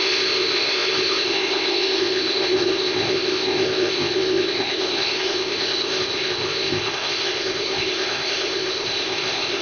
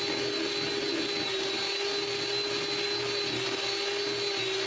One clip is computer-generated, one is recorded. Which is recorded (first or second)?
second